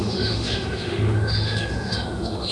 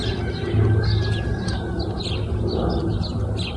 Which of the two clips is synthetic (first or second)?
first